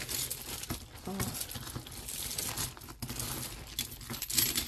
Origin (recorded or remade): recorded